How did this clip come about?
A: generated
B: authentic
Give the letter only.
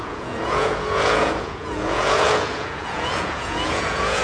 A